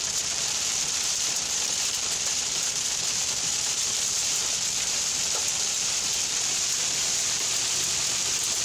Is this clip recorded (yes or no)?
no